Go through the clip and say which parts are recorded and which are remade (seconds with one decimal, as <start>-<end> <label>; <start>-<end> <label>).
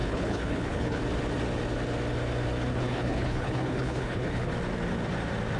0.0-1.0 remade; 1.0-2.7 recorded; 2.7-4.5 remade; 4.5-5.6 recorded